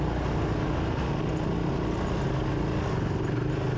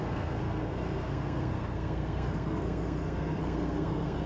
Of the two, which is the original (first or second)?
first